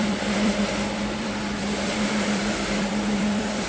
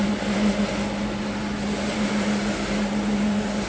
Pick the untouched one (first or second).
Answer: second